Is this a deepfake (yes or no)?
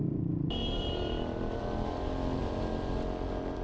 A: no